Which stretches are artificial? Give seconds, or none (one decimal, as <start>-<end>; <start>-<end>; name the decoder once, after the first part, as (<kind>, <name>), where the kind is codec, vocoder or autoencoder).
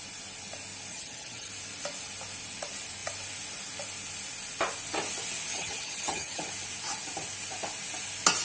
0.9-1.5 (vocoder, HiFi-GAN); 5.5-6.5